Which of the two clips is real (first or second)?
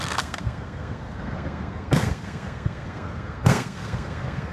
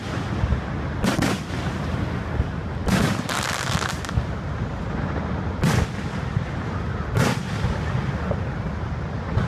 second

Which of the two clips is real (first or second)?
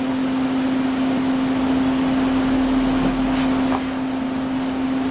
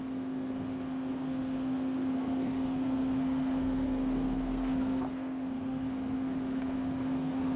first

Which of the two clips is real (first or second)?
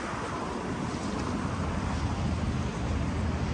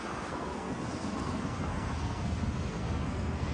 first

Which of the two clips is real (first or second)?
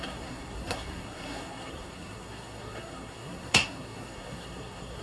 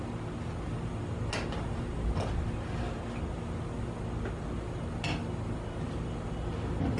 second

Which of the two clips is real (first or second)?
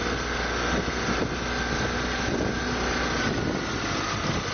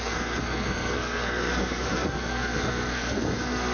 first